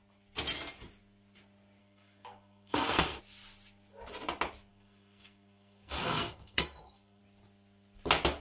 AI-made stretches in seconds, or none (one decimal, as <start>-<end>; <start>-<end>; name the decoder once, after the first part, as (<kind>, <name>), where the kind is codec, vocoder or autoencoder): 1.8-3.2 (codec, SNAC); 4.7-7.2